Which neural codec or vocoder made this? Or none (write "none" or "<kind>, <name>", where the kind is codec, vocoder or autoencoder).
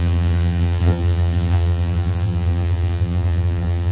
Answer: vocoder, BigVGAN v2